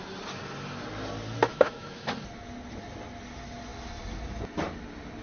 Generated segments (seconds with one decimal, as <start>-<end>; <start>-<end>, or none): 1.5-2.1